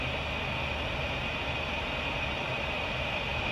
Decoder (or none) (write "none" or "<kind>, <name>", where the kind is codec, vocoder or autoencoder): none